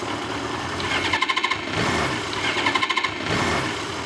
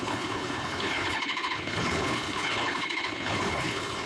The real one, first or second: first